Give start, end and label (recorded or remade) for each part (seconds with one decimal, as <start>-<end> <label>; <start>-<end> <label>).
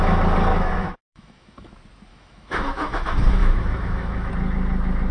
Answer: 0.0-0.5 recorded; 0.5-1.7 remade; 1.7-2.1 recorded; 2.1-4.3 remade; 4.3-5.1 recorded